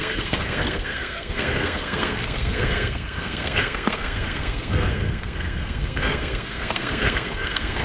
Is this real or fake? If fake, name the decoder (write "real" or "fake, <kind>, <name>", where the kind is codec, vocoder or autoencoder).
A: fake, codec, SNAC